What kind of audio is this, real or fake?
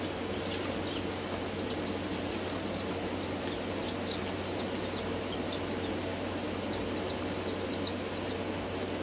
real